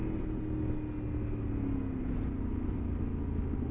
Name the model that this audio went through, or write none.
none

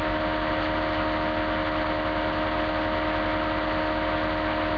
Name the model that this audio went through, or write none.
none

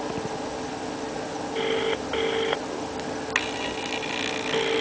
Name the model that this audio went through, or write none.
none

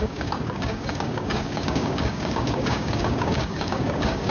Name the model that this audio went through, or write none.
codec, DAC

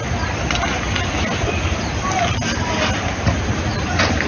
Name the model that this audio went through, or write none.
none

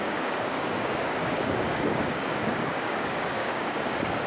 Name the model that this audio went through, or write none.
codec, DAC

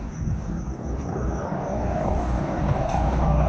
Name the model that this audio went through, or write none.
codec, DAC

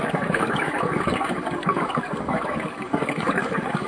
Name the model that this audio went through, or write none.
codec, DAC